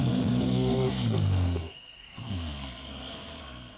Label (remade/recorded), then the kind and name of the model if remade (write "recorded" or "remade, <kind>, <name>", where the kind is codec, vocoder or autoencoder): remade, codec, SNAC